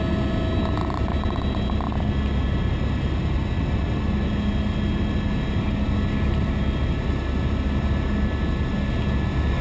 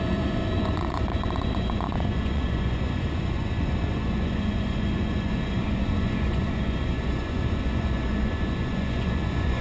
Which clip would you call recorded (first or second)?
first